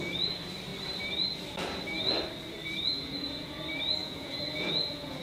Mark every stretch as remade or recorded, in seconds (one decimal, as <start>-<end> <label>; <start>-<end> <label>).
0.0-2.9 recorded; 2.9-3.6 remade; 3.6-4.0 recorded; 4.0-5.2 remade

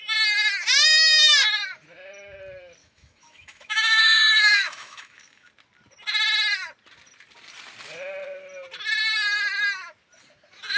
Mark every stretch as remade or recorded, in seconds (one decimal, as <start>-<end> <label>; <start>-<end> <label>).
0.0-2.8 recorded; 2.8-5.5 remade; 5.5-10.8 recorded